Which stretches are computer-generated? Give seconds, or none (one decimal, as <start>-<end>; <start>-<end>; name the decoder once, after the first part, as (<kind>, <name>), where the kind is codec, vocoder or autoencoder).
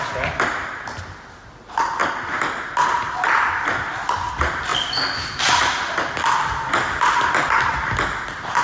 none